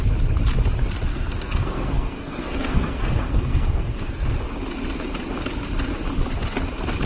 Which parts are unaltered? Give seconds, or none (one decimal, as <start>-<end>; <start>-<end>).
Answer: 0.0-1.1; 4.2-7.1